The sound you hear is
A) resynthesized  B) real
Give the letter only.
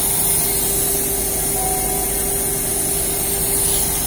B